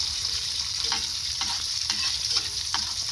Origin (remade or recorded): remade